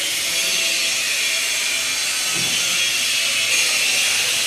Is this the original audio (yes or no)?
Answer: yes